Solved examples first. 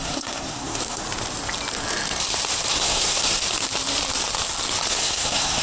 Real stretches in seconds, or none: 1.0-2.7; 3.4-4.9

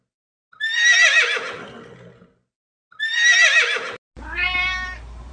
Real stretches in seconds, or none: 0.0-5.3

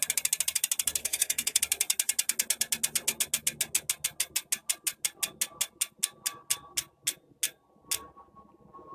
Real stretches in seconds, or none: 0.0-1.0; 1.6-8.9

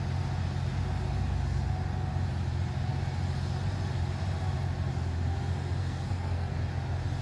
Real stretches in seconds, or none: 0.0-5.8; 6.6-7.2

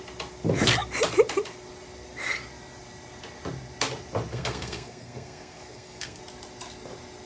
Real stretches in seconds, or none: 0.0-4.3; 6.2-7.3